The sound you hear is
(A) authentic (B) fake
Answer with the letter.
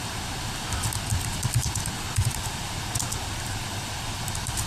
A